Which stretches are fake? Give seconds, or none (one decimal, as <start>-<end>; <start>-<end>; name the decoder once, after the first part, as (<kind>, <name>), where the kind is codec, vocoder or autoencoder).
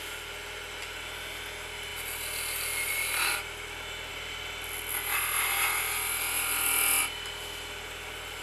none